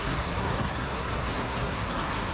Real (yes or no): no